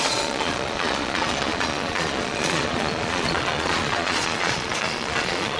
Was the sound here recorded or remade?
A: remade